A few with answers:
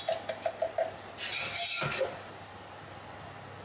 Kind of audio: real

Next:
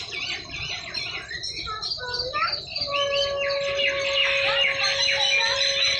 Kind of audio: real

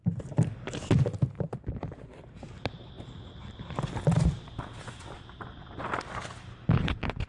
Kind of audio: real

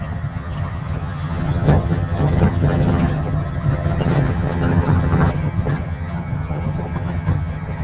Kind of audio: fake